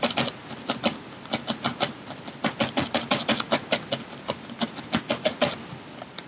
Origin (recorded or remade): recorded